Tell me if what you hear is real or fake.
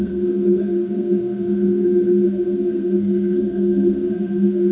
fake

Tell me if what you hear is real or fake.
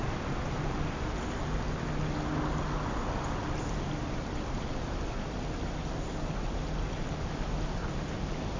real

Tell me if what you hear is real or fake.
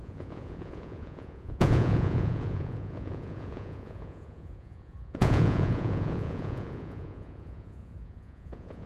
fake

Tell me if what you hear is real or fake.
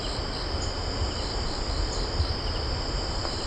real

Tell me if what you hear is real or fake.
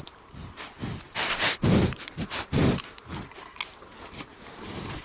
real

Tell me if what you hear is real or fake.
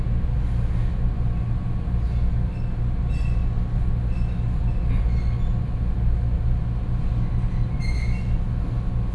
real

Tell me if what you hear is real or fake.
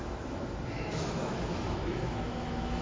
fake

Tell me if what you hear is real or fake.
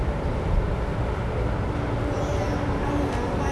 real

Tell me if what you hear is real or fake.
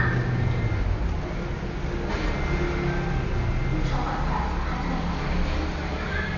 real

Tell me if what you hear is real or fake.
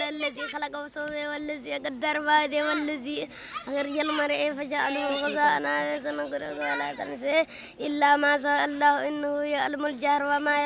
real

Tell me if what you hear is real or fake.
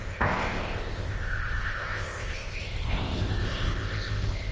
fake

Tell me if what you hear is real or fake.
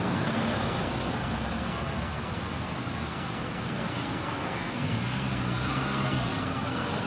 fake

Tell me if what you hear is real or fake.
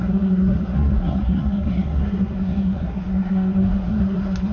fake